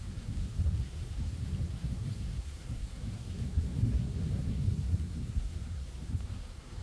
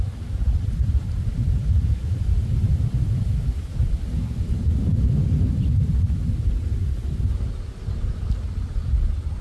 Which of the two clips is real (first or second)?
second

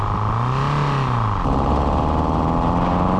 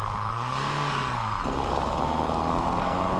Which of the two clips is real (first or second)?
first